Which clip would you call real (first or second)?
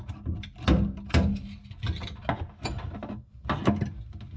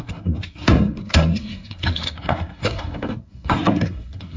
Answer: first